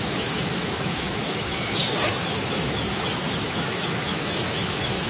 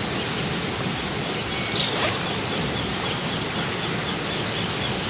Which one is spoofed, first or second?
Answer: first